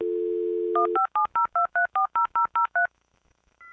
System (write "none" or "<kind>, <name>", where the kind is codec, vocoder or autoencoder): autoencoder, DAC-VAE